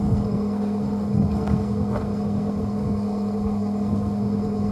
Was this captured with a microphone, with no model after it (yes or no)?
no